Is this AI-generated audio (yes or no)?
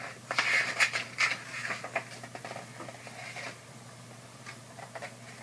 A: no